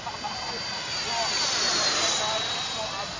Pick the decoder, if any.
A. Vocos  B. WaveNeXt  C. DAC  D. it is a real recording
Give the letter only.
D